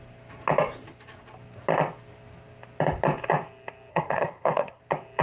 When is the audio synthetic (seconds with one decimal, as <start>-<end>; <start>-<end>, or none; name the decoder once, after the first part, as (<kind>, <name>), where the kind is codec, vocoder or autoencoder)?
3.9-4.8 (codec, SNAC)